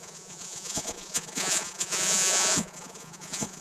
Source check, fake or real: fake